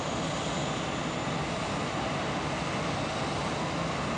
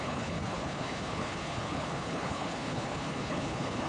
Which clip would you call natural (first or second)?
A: first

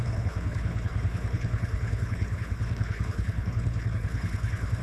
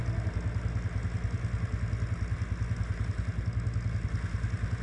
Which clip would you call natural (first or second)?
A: second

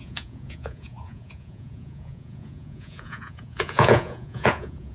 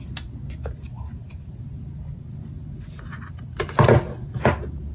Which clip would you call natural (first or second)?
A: second